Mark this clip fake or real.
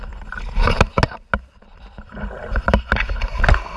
real